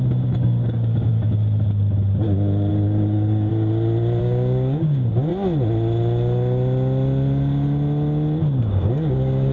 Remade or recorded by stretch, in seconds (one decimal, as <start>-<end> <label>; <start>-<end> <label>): 0.0-1.1 remade; 1.1-2.7 recorded; 2.7-3.5 remade; 3.5-4.2 recorded; 4.2-5.3 remade; 5.3-8.6 recorded; 8.6-9.5 remade